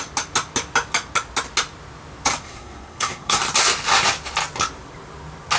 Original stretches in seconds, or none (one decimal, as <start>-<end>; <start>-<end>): 0.0-2.4; 3.4-5.6